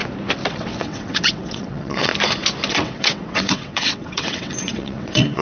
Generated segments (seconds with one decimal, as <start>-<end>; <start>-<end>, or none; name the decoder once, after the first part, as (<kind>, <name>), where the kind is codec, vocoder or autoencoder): 0.5-2.1 (vocoder, WaveNeXt); 2.7-5.4